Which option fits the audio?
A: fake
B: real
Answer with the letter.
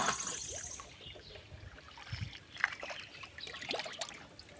B